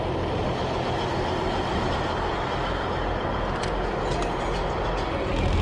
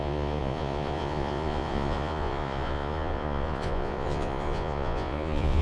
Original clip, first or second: first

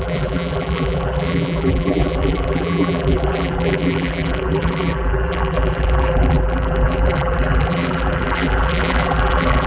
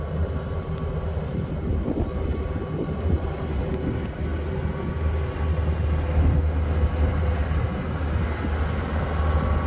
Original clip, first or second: second